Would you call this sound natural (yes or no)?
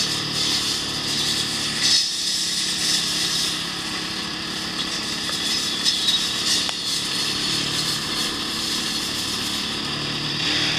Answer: no